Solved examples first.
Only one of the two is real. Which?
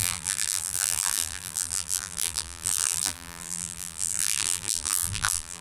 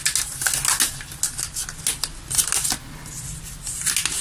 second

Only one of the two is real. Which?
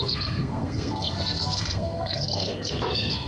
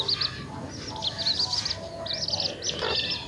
second